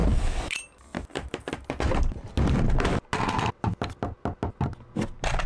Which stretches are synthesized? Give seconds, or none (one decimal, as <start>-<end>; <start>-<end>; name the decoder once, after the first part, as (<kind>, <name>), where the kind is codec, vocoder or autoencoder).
none